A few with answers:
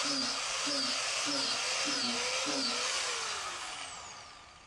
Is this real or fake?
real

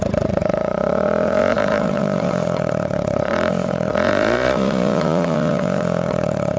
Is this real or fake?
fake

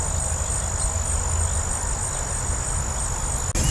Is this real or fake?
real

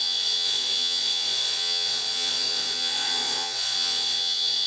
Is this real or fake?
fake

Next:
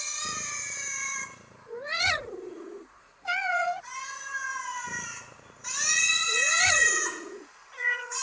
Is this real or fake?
fake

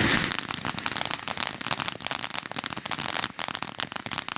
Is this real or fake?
real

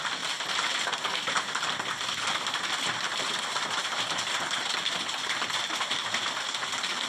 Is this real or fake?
real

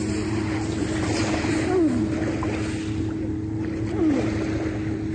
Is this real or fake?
real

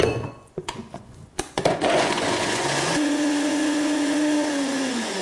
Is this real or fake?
fake